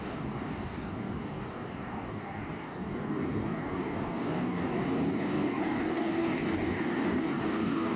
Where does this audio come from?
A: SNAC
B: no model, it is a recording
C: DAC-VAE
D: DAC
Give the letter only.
D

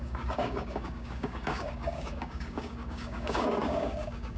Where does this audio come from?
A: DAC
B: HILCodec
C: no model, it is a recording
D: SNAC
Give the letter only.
A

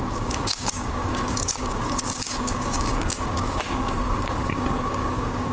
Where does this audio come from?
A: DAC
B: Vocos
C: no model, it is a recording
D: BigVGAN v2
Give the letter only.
A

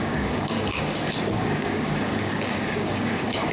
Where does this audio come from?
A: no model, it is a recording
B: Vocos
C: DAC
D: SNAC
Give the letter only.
C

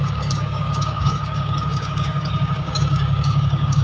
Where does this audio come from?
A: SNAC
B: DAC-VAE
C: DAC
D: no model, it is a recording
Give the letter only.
C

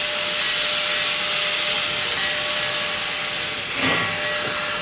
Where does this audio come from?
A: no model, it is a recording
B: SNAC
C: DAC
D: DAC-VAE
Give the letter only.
A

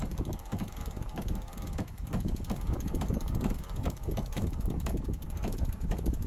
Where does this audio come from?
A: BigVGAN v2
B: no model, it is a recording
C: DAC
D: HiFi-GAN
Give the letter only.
C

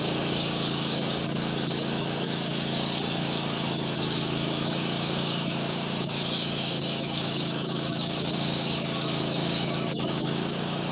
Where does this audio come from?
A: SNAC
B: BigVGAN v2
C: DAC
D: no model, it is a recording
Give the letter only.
C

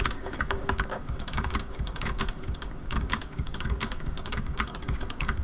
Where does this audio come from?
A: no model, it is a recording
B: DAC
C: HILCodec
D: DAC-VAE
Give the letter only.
B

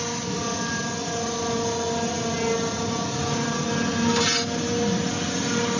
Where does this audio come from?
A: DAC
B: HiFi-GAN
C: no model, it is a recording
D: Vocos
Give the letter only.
C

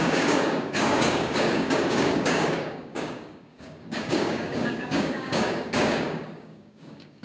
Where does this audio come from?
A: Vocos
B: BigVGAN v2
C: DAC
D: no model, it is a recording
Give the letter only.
C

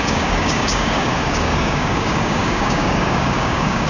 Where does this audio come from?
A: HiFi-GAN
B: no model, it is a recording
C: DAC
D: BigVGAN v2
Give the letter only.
C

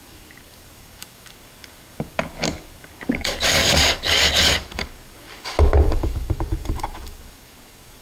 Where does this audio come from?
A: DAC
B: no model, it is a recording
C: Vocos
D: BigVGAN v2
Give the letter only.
A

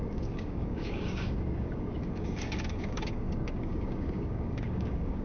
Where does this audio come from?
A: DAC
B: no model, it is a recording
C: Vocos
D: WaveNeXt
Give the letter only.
A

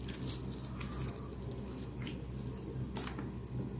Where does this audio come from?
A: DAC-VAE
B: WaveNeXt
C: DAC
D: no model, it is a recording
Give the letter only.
D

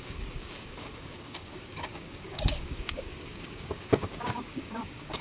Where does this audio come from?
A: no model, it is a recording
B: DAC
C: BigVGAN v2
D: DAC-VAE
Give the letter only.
B